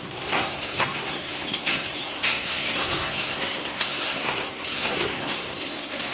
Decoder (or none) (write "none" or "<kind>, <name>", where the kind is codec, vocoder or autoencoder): codec, SNAC